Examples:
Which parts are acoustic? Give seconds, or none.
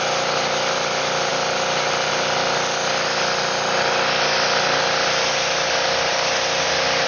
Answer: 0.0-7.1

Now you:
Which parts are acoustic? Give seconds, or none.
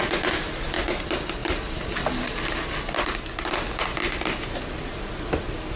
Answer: 0.0-5.8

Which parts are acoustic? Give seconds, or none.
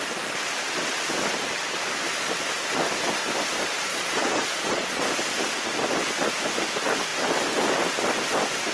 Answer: 0.0-3.9; 5.0-8.7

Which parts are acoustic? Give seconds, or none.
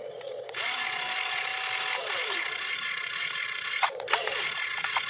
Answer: 1.5-2.0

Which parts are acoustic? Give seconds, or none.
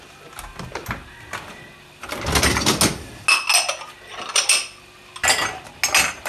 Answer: 0.0-6.3